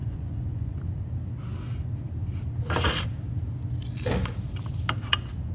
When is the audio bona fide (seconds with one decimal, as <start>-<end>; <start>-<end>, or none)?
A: 0.8-5.5